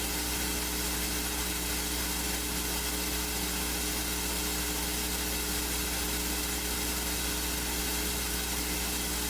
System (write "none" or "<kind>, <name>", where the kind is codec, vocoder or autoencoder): none